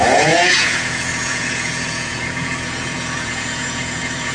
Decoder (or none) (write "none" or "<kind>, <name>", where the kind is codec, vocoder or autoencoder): vocoder, Vocos